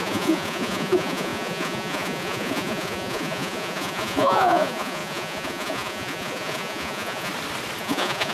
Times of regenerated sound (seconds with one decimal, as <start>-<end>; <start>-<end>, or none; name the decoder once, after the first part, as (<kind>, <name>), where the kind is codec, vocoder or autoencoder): 0.0-7.3 (vocoder, Vocos); 7.8-8.3